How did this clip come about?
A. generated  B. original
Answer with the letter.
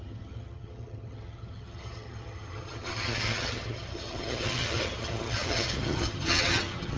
A